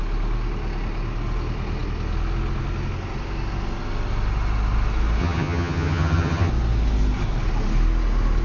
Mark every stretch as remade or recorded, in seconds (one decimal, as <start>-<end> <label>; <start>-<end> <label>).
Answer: 0.0-5.2 recorded; 5.2-6.5 remade; 6.5-8.4 recorded